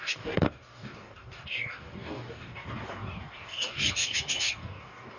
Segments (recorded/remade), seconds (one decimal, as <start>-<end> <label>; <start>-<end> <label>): 0.0-5.2 remade

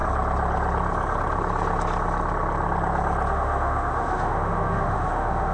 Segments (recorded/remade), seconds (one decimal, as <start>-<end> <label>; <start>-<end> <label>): 0.0-3.3 recorded; 3.3-5.5 remade

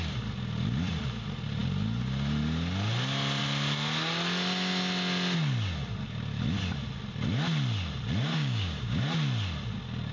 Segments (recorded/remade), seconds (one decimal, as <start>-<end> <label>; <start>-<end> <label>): 0.0-8.3 recorded; 8.3-9.0 remade; 9.0-10.1 recorded

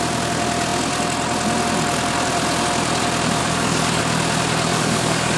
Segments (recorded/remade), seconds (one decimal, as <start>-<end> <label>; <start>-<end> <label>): 0.0-3.4 recorded; 3.4-4.0 remade; 4.0-4.7 recorded; 4.7-5.4 remade

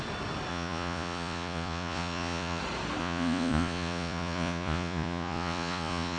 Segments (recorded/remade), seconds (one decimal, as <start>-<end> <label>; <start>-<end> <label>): 0.0-0.5 recorded; 0.5-2.6 remade; 2.6-3.0 recorded; 3.0-6.2 remade

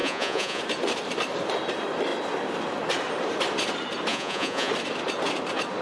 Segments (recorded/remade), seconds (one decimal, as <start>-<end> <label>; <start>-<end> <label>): 0.0-0.6 remade; 0.6-4.1 recorded; 4.1-4.7 remade; 4.7-5.8 recorded